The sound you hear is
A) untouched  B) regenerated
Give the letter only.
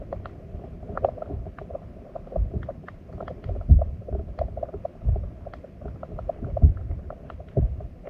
B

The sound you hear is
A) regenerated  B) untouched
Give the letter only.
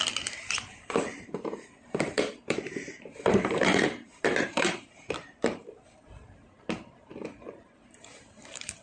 A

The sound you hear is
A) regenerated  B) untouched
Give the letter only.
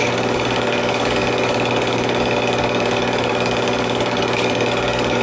A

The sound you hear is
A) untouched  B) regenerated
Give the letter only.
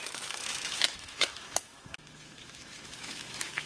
B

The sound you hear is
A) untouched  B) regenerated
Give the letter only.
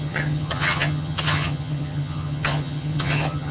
B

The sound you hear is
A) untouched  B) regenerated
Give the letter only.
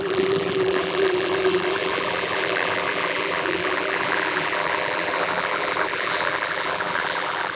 B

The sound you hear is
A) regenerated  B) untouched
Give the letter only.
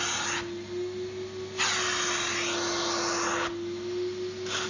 B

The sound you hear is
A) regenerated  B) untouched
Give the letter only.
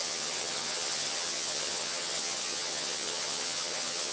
A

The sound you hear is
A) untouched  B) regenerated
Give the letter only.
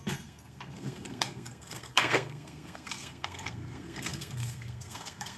B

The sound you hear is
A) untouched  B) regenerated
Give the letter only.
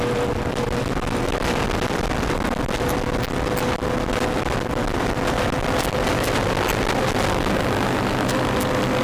A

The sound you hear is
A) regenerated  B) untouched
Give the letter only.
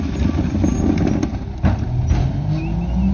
B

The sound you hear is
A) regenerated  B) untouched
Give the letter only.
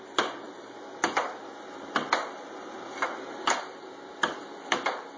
B